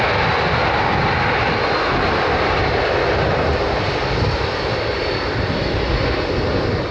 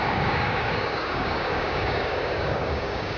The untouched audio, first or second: first